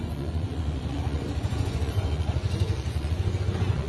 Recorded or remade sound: remade